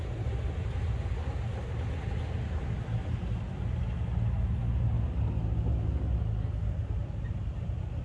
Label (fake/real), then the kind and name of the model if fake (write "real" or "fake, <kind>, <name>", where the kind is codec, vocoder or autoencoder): real